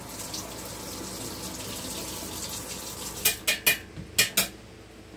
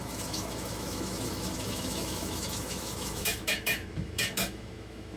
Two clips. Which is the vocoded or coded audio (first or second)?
second